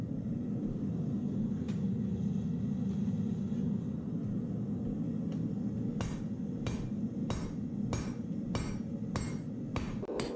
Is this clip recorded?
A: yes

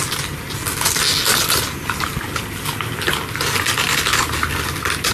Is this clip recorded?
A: yes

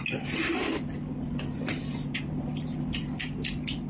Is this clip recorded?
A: yes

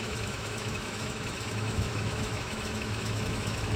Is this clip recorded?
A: no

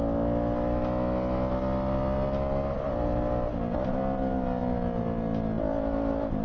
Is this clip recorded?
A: yes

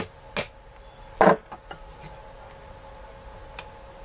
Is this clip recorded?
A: yes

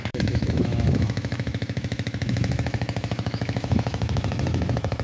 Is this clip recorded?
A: no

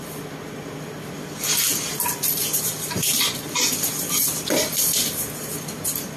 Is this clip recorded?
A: yes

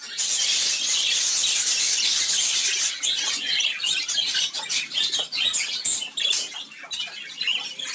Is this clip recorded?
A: yes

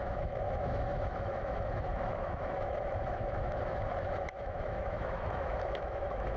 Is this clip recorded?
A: no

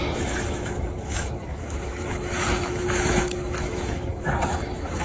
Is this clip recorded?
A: no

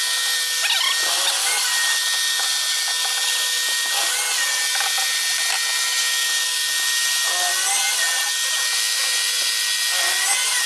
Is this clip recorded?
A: yes